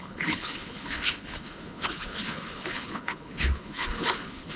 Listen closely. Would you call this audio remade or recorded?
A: remade